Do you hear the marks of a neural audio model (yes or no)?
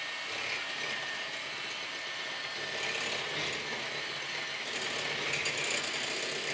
no